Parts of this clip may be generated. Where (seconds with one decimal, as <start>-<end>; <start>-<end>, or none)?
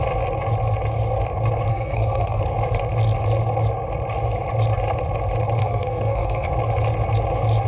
1.7-2.4; 5.6-6.5